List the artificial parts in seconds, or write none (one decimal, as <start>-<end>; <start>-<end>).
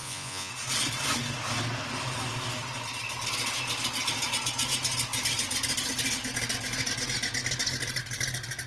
0.0-0.5